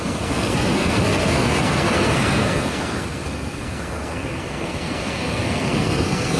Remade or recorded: remade